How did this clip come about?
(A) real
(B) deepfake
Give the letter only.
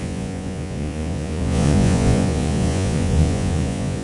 B